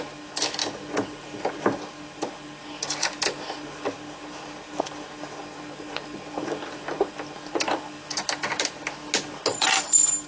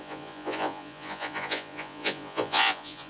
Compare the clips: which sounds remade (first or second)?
second